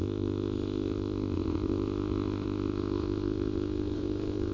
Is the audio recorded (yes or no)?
no